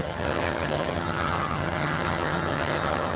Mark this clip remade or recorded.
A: remade